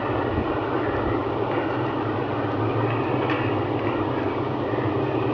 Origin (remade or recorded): recorded